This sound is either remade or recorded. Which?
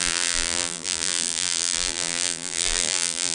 remade